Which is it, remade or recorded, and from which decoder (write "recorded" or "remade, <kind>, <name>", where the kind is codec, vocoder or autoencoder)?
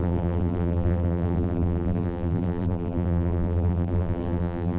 remade, vocoder, BigVGAN v2